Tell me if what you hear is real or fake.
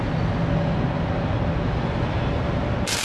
real